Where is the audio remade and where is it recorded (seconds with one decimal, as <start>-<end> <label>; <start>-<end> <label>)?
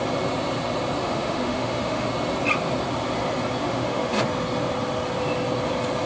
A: 0.0-1.0 recorded; 1.0-2.1 remade; 2.1-3.6 recorded; 3.6-4.1 remade; 4.1-6.1 recorded